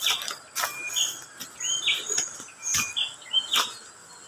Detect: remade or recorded recorded